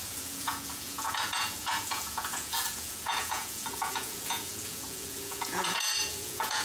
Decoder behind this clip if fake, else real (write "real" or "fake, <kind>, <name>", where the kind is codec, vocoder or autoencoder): fake, vocoder, Vocos